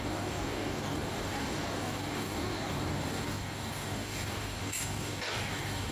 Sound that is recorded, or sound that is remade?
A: remade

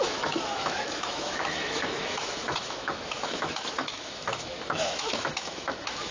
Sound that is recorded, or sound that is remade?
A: remade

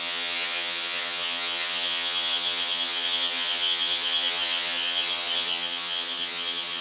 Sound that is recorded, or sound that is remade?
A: remade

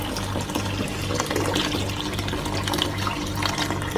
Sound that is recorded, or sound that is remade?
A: recorded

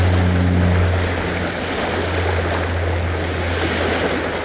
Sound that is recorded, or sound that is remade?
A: recorded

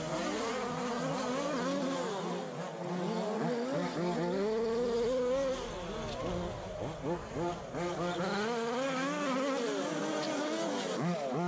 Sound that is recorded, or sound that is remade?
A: recorded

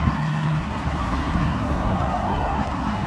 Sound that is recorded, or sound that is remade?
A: remade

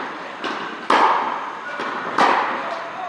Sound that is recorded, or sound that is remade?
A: recorded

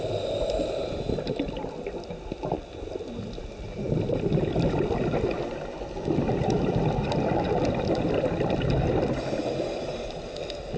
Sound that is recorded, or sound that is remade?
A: recorded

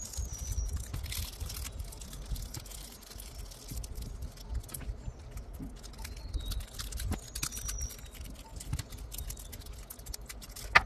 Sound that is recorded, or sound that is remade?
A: recorded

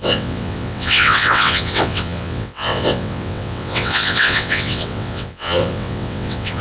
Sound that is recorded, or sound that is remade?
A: remade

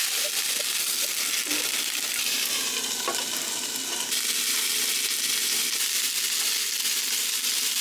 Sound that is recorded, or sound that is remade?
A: recorded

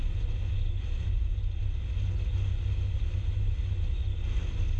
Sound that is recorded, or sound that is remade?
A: recorded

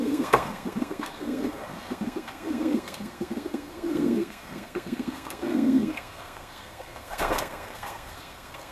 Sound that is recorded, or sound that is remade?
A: remade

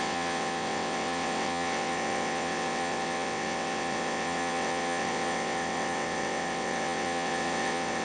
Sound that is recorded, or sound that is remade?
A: remade